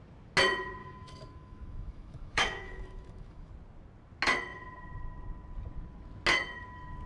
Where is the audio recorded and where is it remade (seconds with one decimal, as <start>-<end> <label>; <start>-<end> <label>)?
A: 0.0-0.8 recorded; 0.8-3.5 remade; 3.5-7.1 recorded